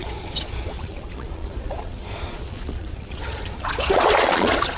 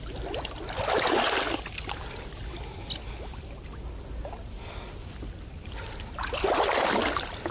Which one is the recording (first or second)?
second